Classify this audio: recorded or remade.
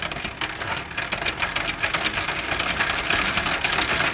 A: recorded